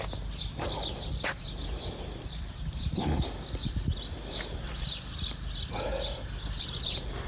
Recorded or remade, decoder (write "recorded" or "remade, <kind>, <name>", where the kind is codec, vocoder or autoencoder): recorded